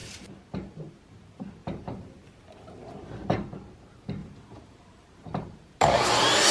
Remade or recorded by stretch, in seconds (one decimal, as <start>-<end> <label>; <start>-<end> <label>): 0.0-1.0 remade; 1.0-1.6 recorded; 1.6-2.2 remade; 2.2-4.2 recorded; 4.2-5.8 remade; 5.8-6.5 recorded